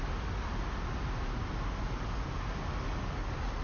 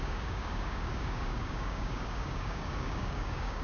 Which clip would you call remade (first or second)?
second